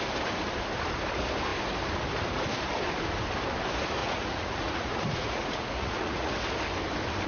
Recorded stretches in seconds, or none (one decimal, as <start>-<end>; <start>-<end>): 0.0-4.0; 6.3-7.3